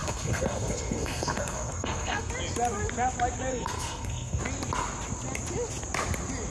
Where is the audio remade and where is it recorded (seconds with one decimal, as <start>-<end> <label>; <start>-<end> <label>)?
0.0-2.3 remade; 2.3-3.5 recorded; 3.5-4.4 remade; 4.4-6.5 recorded